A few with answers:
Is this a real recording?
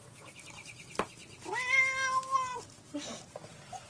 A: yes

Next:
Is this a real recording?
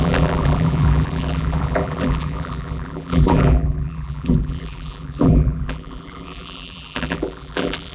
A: no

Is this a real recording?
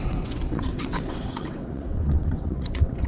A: no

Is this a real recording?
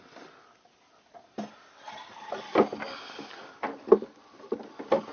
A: yes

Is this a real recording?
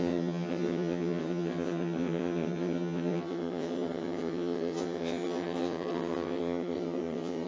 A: no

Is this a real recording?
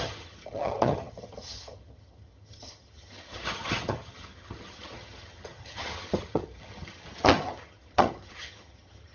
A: no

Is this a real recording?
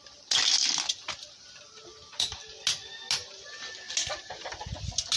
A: yes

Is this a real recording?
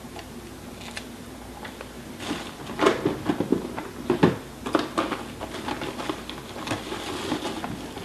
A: yes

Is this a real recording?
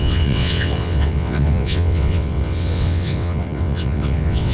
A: no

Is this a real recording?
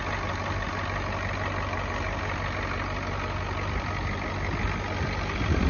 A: yes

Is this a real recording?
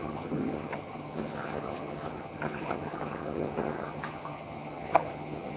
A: no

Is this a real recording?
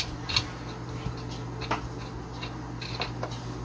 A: yes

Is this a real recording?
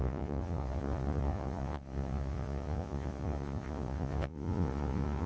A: no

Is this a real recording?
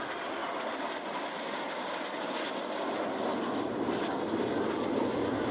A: yes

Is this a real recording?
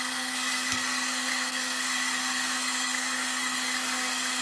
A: no